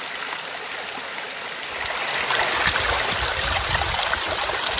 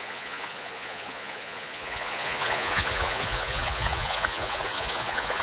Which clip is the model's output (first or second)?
second